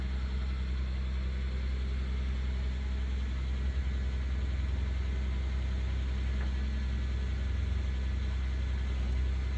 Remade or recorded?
recorded